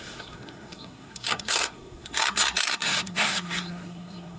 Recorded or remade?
remade